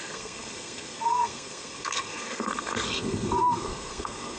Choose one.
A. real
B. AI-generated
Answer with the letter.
B